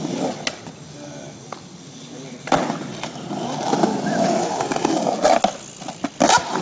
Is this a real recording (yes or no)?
yes